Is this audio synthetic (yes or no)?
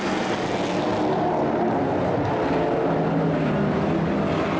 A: no